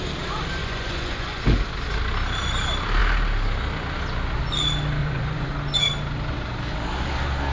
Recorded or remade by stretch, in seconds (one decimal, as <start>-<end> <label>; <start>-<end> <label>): 0.0-0.6 recorded; 0.6-1.4 remade; 1.4-5.0 recorded; 5.0-5.5 remade; 5.5-7.5 recorded